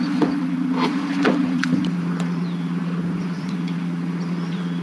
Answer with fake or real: fake